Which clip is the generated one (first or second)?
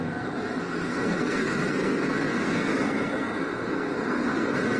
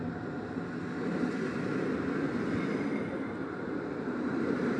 first